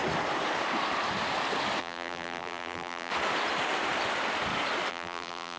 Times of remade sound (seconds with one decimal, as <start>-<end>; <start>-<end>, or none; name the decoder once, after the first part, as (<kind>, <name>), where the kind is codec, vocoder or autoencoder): 1.8-3.1 (vocoder, BigVGAN v2); 4.9-5.6